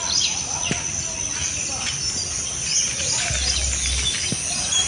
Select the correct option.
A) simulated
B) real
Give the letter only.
B